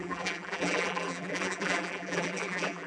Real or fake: fake